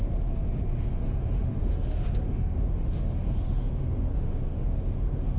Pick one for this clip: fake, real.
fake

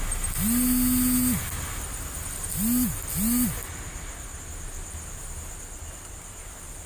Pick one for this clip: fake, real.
real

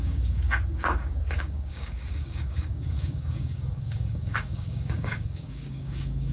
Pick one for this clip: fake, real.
fake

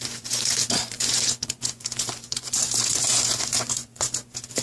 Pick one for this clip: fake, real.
fake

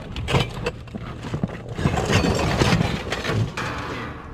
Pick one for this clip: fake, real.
real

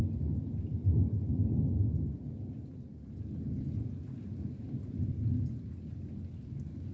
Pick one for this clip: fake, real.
real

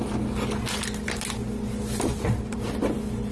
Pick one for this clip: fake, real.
real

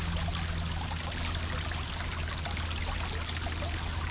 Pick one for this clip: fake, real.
real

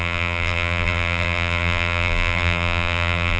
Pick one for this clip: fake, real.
fake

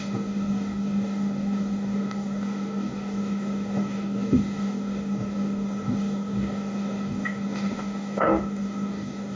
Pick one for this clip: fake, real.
fake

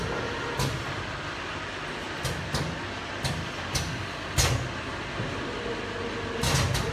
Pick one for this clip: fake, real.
real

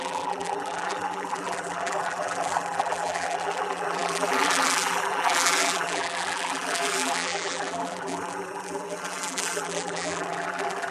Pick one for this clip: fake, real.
fake